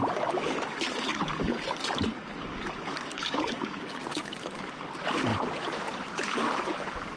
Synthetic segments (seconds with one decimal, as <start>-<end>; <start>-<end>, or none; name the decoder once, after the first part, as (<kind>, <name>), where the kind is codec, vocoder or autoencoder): 0.0-7.2 (codec, DAC)